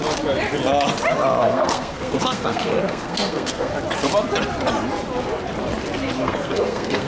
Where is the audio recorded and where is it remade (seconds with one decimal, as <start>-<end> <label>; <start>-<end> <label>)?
0.0-1.4 recorded; 1.4-3.7 remade; 3.7-6.2 recorded; 6.2-7.1 remade